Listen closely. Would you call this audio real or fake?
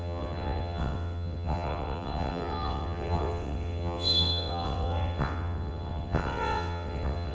fake